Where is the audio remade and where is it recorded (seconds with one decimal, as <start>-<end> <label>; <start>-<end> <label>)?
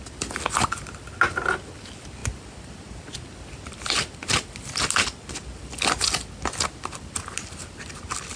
0.0-8.4 recorded